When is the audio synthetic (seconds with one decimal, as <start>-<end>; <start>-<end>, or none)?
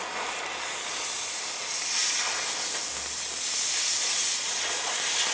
none